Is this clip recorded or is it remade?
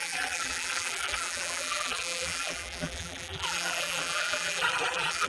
remade